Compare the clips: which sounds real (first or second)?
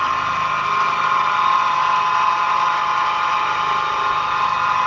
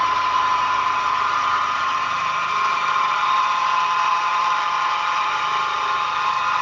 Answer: first